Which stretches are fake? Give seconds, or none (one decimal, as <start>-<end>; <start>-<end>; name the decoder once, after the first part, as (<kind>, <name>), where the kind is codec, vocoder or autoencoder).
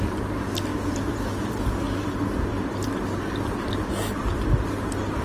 0.7-3.8 (vocoder, BigVGAN v2)